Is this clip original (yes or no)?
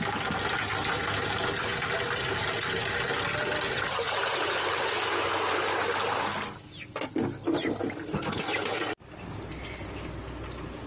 yes